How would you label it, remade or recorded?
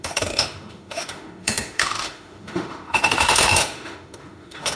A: remade